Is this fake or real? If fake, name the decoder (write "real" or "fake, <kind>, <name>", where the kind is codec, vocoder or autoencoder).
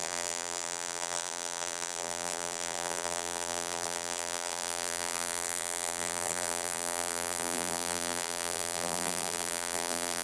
fake, vocoder, BigVGAN v2